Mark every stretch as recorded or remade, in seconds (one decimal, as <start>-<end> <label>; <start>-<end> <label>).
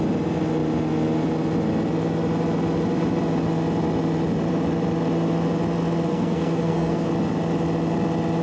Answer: 0.0-6.1 recorded; 6.1-7.1 remade; 7.1-8.4 recorded